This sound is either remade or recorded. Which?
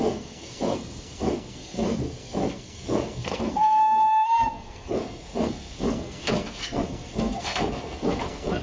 remade